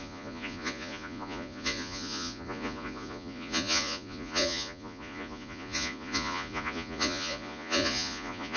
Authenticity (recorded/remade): remade